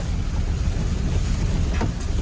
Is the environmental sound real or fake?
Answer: real